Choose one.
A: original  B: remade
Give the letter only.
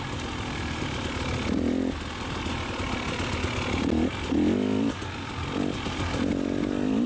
A